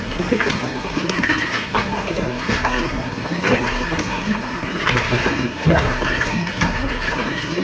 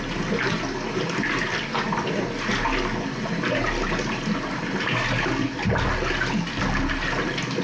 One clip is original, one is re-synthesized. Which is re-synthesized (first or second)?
first